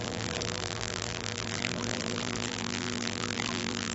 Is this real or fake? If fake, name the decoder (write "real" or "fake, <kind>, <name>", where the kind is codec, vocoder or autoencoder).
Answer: fake, vocoder, BigVGAN v2